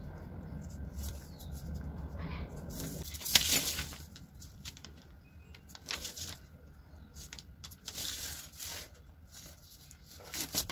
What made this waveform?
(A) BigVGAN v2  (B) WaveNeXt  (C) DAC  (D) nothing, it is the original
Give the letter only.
A